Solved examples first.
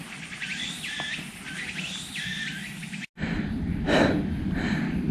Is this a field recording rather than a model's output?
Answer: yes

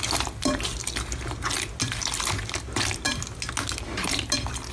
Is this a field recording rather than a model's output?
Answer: yes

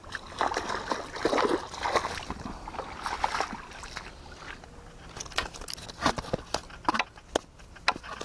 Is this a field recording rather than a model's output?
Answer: yes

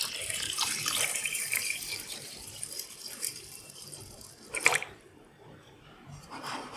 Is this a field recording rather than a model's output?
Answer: no